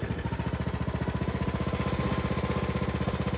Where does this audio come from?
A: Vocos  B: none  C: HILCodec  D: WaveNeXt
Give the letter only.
B